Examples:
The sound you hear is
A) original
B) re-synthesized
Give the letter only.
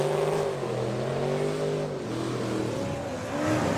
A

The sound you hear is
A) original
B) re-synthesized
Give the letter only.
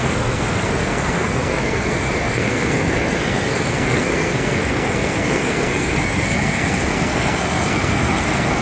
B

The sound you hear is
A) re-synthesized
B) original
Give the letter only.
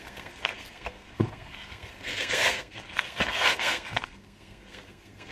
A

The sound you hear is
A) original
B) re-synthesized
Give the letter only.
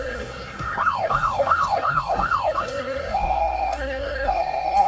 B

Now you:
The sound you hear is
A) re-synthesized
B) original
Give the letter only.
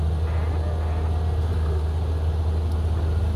B